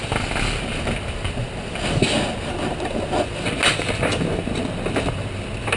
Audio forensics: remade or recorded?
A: recorded